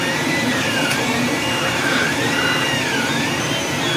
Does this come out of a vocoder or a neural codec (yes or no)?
yes